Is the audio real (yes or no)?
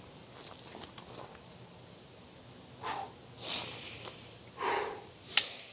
yes